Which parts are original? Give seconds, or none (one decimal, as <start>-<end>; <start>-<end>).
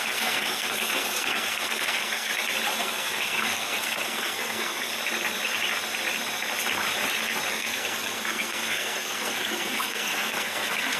2.3-2.8; 4.9-7.5